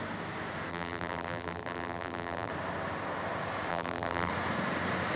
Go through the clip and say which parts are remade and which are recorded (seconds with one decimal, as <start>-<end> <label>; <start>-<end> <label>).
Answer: 0.0-0.7 recorded; 0.7-2.5 remade; 2.5-3.7 recorded; 3.7-4.3 remade; 4.3-5.2 recorded